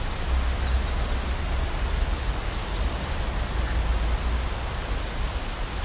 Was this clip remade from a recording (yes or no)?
no